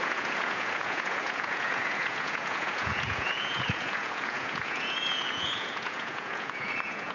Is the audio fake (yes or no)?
yes